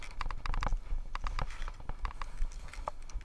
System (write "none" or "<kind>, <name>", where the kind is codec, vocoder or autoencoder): none